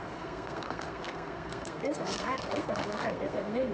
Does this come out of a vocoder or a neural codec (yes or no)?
yes